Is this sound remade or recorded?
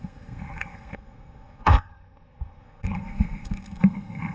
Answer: remade